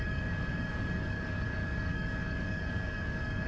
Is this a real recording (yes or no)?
no